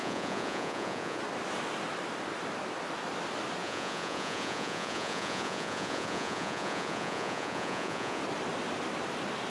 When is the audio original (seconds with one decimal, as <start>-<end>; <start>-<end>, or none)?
1.2-3.6; 8.2-9.5